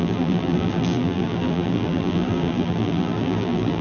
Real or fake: fake